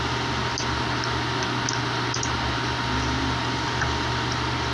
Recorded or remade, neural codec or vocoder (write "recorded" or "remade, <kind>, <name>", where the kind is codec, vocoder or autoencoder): recorded